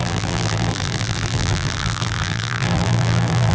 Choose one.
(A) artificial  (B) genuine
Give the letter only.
A